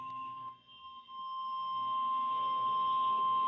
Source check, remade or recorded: remade